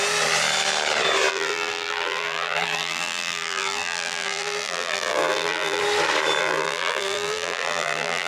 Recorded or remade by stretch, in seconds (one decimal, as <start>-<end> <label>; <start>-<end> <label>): 0.0-1.3 recorded; 1.3-5.8 remade; 5.8-6.4 recorded; 6.4-8.3 remade

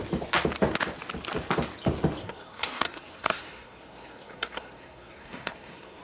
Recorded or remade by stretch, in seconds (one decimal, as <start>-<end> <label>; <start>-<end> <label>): 0.0-2.2 recorded; 2.2-6.0 remade

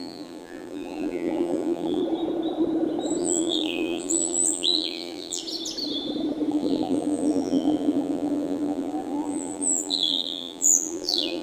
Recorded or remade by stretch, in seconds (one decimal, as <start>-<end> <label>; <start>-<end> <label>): 0.0-2.0 remade; 2.0-3.2 recorded; 3.2-5.4 remade; 5.4-6.5 recorded; 6.5-11.4 remade

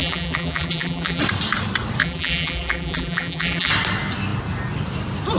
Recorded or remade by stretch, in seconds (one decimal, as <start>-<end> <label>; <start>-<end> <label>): 0.0-1.2 remade; 1.2-2.0 recorded; 2.0-3.7 remade; 3.7-5.4 recorded

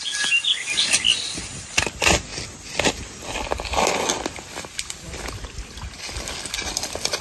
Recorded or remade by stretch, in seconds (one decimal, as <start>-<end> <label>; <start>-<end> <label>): 0.0-7.2 recorded

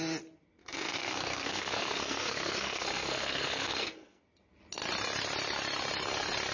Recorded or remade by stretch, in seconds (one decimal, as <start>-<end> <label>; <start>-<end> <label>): 0.0-0.6 recorded; 0.6-4.2 remade; 4.2-6.5 recorded

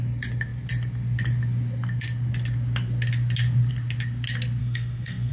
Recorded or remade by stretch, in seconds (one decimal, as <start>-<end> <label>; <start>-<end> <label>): 0.0-4.6 recorded; 4.6-5.3 remade